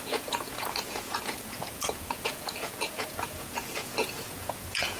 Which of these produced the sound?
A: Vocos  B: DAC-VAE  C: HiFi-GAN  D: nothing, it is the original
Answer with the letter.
A